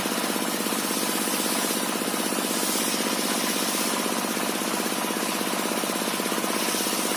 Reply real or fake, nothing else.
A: real